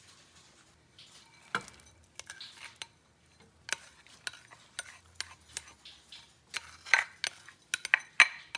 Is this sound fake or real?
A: real